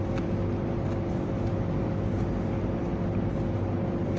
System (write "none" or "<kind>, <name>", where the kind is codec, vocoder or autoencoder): none